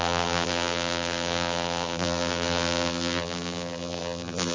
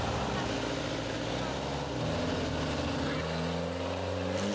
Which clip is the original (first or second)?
second